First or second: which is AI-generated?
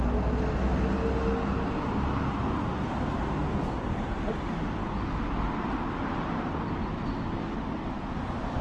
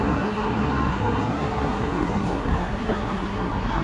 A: second